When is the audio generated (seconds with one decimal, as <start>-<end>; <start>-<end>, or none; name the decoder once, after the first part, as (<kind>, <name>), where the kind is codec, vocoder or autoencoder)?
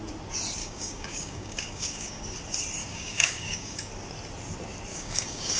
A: 0.6-2.2 (codec, DAC); 2.8-3.9; 4.9-5.6